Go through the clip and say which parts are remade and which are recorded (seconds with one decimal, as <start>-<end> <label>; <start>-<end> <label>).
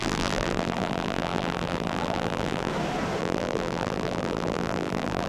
0.0-2.7 remade; 2.7-3.2 recorded; 3.2-5.3 remade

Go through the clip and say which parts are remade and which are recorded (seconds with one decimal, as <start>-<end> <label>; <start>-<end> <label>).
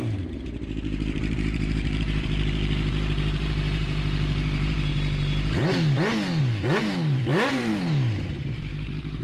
0.0-4.9 remade; 4.9-6.4 recorded; 6.4-9.2 remade